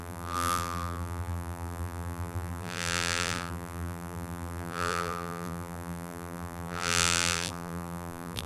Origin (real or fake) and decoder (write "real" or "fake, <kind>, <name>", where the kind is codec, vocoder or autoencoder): fake, vocoder, BigVGAN v2